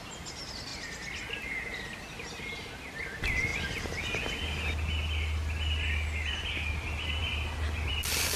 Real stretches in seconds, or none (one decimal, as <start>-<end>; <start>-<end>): 0.0-8.4